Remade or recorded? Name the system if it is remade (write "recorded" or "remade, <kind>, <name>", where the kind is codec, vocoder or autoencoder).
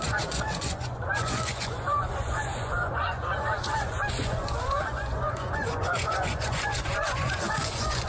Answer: remade, vocoder, Vocos